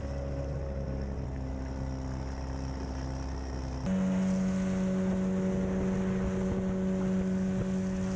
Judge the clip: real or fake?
real